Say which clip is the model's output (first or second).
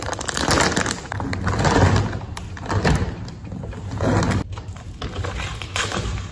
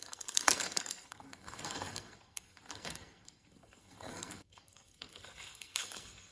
second